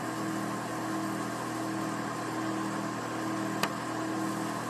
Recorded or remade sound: recorded